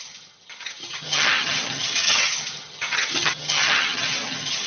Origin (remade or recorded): remade